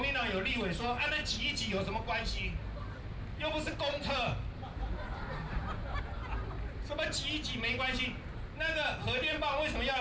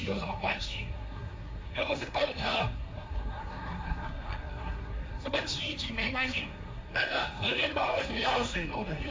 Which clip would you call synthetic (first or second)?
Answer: second